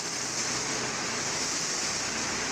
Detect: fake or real real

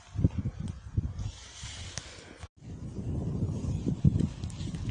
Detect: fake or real real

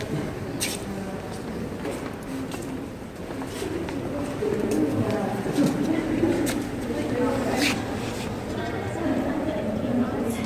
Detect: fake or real real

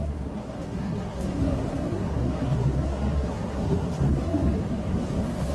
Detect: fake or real fake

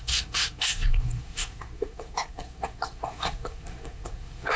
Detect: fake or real fake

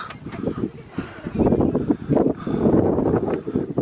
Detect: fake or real real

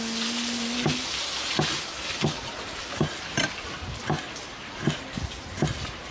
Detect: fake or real real